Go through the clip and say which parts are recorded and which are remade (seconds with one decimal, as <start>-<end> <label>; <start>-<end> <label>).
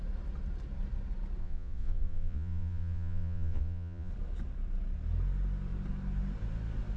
0.0-1.4 recorded; 1.4-4.1 remade; 4.1-7.0 recorded